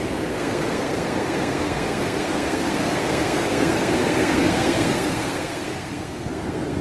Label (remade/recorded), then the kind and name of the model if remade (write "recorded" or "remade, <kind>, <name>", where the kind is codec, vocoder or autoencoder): remade, codec, SNAC